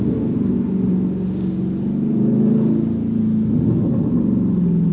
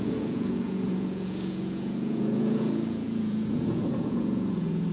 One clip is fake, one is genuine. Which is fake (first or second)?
second